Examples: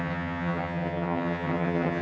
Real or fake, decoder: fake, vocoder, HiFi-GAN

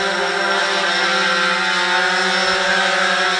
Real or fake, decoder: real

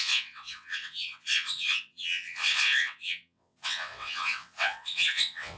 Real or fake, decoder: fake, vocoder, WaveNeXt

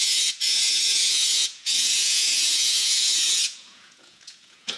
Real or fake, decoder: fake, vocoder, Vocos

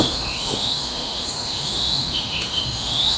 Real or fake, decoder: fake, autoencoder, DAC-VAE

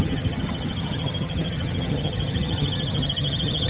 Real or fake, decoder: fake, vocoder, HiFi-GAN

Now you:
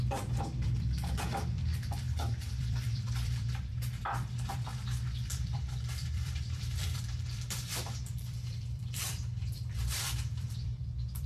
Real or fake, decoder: fake, vocoder, BigVGAN v2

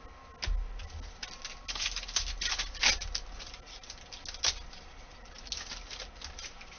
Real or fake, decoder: real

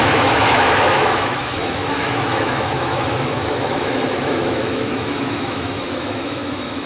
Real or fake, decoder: fake, autoencoder, DAC-VAE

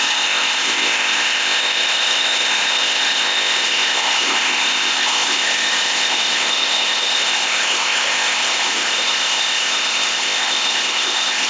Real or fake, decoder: fake, codec, ZipCodec